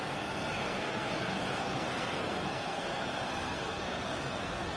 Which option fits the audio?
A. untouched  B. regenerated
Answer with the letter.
B